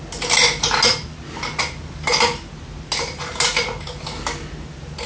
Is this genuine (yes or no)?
yes